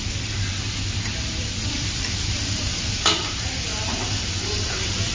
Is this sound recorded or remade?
remade